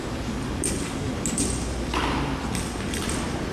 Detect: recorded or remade recorded